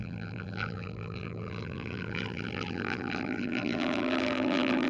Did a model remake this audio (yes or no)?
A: yes